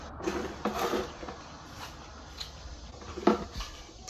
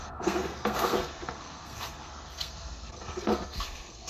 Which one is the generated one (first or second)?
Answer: second